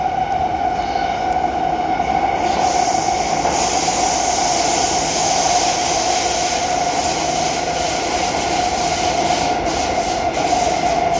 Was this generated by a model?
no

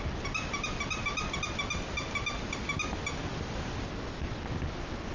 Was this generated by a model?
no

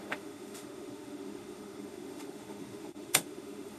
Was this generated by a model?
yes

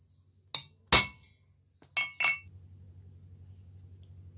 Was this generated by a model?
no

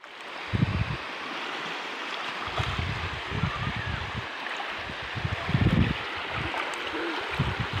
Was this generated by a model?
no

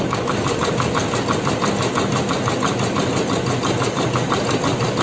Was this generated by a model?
no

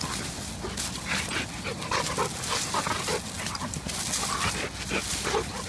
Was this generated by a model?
no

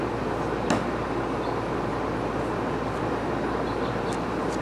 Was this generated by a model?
no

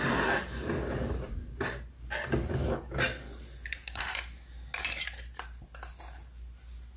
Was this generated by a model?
no